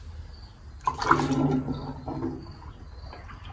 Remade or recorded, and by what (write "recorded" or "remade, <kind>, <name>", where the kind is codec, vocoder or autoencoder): recorded